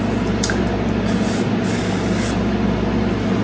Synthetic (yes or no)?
no